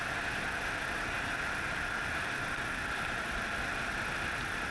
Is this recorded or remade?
recorded